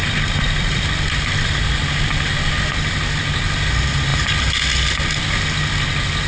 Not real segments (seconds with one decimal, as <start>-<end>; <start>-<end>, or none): none